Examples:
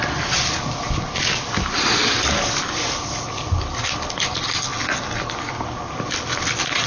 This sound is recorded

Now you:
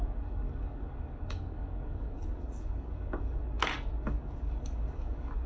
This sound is remade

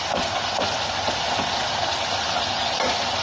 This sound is recorded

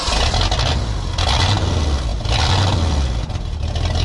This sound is recorded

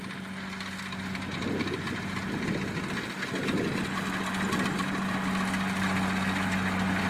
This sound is recorded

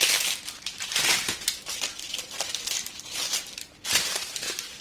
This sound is recorded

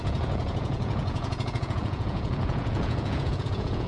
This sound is remade